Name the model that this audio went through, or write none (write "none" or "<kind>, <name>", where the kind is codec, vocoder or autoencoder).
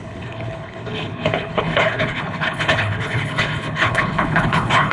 codec, HILCodec